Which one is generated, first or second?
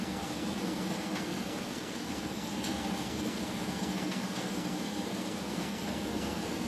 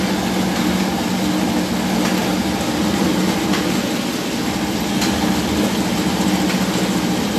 first